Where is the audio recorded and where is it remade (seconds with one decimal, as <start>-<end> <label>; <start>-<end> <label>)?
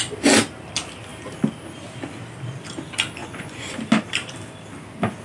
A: 0.0-3.2 recorded; 3.2-3.8 remade; 3.8-5.2 recorded